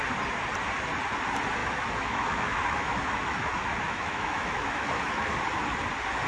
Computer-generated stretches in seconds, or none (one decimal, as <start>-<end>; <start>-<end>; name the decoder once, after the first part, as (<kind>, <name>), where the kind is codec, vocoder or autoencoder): 1.6-5.4 (autoencoder, DAC-VAE)